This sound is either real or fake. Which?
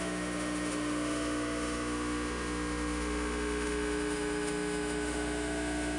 fake